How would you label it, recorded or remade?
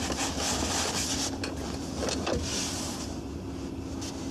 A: recorded